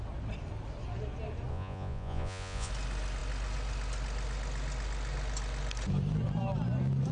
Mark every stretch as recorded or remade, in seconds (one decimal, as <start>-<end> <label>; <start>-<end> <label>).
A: 0.0-1.5 recorded; 1.5-2.7 remade; 2.7-7.1 recorded